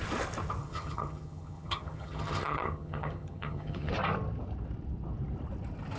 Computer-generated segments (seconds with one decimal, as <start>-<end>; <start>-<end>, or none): 0.6-3.9